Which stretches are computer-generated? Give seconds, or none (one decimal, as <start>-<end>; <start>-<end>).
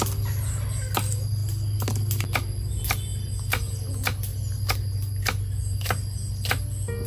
none